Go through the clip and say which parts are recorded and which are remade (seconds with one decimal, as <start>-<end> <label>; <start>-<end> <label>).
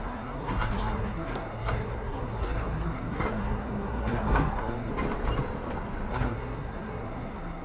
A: 0.0-4.9 remade; 4.9-6.1 recorded; 6.1-7.6 remade